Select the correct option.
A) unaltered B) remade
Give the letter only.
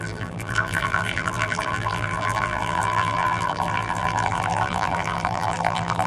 B